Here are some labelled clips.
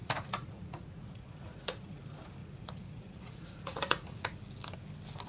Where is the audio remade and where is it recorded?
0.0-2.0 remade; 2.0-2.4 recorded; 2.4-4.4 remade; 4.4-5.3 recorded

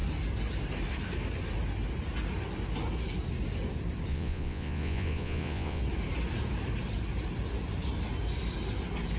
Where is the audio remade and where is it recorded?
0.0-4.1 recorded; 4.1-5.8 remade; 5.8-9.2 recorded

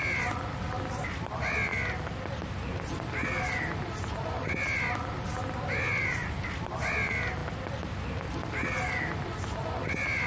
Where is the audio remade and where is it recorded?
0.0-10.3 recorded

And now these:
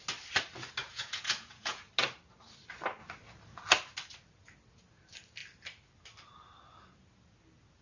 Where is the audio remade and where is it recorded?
0.0-0.8 recorded; 0.8-1.9 remade; 1.9-7.8 recorded